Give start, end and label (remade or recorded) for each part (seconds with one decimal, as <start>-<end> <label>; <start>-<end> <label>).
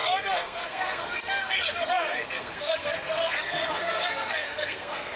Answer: 0.0-5.2 remade